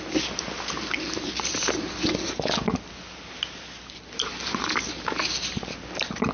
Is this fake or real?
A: real